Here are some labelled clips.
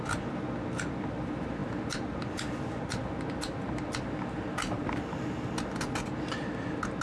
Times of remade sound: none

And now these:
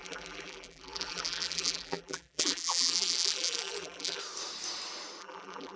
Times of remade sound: 0.0-4.2 (vocoder, BigVGAN v2); 5.2-5.8

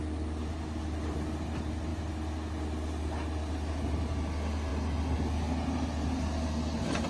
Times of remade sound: none

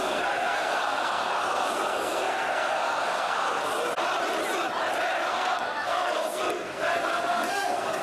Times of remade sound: 0.0-3.7 (codec, SNAC); 5.3-8.0

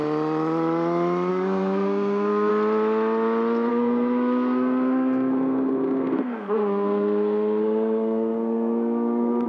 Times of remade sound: 1.3-2.5 (codec, SNAC); 3.7-9.5

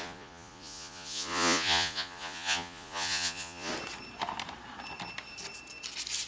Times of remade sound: 0.0-3.7 (vocoder, Vocos)

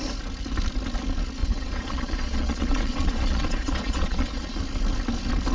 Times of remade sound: 1.4-4.6 (vocoder, Vocos)